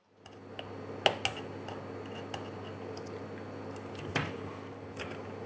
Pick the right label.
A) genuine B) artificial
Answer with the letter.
A